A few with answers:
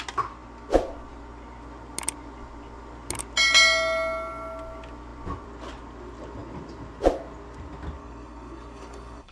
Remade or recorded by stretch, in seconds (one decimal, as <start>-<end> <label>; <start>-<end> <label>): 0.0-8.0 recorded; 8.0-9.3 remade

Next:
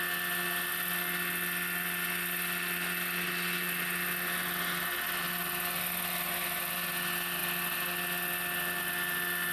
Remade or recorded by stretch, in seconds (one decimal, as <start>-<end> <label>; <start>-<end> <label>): 0.0-9.5 recorded

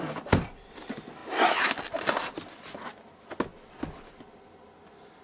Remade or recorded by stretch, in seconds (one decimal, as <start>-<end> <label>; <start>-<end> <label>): 0.0-5.2 recorded

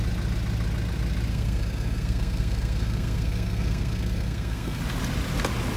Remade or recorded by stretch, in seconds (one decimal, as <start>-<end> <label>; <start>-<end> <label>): 0.0-1.3 recorded; 1.3-4.8 remade; 4.8-5.8 recorded

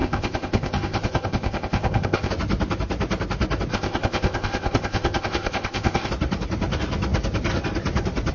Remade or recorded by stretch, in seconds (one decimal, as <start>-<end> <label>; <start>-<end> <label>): 0.0-2.3 remade; 2.3-3.7 recorded; 3.7-6.1 remade; 6.1-8.3 recorded